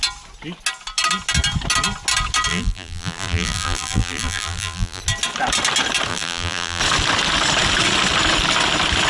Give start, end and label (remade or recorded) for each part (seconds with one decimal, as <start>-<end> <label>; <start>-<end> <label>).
0.0-2.5 recorded; 2.5-5.0 remade; 5.0-6.1 recorded; 6.1-6.8 remade; 6.8-9.1 recorded